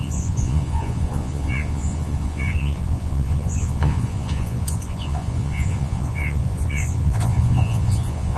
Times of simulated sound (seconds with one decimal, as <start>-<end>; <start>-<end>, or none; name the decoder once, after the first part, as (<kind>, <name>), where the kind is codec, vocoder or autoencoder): 0.0-8.4 (vocoder, Vocos)